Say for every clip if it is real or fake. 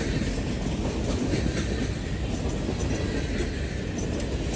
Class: real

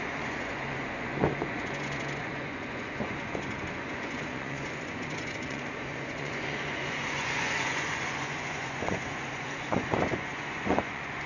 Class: fake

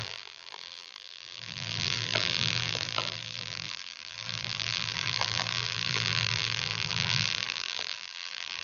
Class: fake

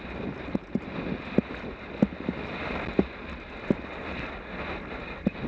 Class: real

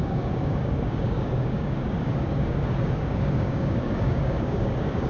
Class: fake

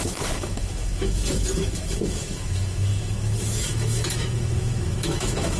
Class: fake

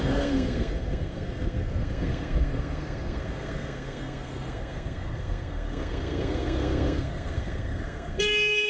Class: fake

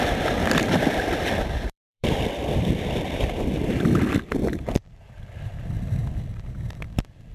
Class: fake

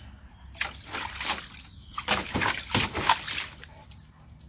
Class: real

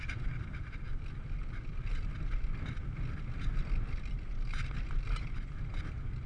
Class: real